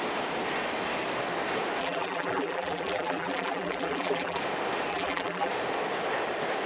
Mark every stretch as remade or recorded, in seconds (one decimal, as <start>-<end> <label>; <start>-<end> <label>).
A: 0.0-1.8 recorded; 1.8-4.4 remade; 4.4-4.9 recorded; 4.9-5.5 remade; 5.5-6.7 recorded